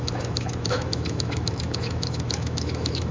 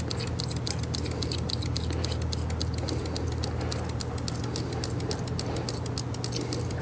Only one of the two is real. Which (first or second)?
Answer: second